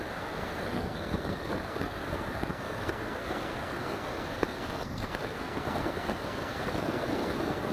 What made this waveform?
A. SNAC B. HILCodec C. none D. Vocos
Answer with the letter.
A